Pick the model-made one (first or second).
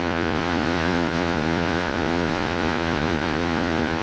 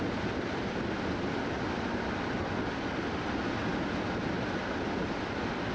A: first